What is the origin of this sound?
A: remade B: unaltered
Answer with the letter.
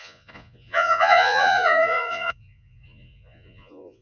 A